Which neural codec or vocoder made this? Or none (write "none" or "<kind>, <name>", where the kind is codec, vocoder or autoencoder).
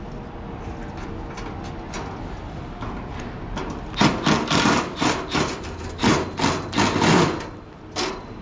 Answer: none